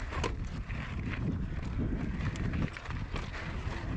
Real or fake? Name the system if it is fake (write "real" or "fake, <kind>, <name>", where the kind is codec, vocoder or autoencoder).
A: real